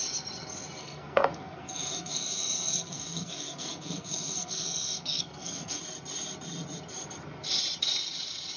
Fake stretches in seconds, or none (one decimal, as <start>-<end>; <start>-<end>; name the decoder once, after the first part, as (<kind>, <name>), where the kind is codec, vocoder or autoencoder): 0.8-5.8 (codec, SNAC)